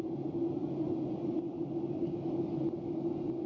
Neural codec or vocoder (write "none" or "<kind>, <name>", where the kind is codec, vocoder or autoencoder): none